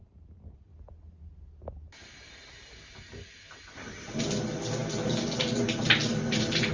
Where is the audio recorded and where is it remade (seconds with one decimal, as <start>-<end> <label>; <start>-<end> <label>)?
0.0-0.7 remade; 0.7-4.2 recorded; 4.2-6.7 remade